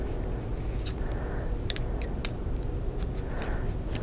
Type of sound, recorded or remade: recorded